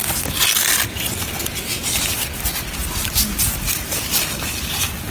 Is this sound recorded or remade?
recorded